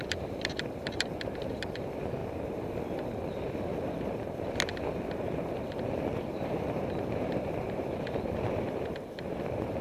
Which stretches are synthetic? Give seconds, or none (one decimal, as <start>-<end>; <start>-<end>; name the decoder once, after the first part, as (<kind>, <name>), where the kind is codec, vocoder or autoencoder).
0.0-2.2 (vocoder, BigVGAN v2); 6.2-9.8